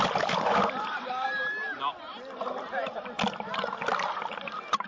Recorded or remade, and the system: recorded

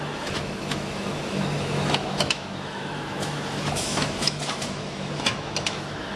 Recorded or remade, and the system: remade, autoencoder, DAC-VAE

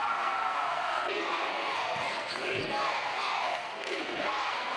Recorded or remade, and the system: remade, codec, SNAC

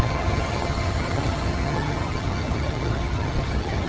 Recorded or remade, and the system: remade, vocoder, HiFi-GAN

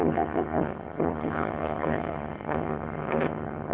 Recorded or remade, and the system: remade, vocoder, HiFi-GAN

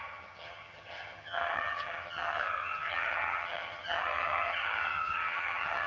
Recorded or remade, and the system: remade, vocoder, HiFi-GAN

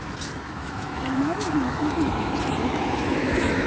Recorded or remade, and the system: remade, autoencoder, DAC-VAE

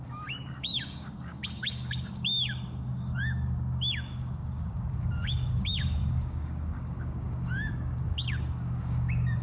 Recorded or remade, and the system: remade, codec, DAC